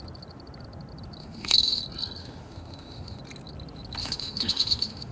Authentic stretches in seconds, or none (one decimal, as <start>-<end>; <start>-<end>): 0.0-1.2; 1.8-2.2; 3.2-4.0

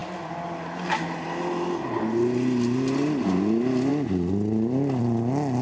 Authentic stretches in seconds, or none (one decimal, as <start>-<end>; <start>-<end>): 0.0-5.6

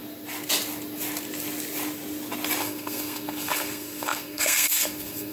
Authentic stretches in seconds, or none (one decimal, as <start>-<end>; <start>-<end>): 0.0-2.6

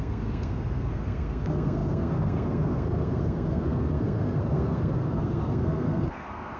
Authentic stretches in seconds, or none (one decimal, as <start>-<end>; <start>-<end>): none

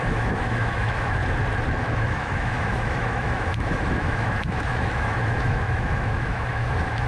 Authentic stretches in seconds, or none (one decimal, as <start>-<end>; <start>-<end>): 1.2-1.8

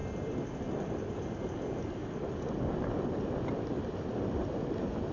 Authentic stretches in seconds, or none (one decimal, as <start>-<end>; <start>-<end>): 0.0-5.1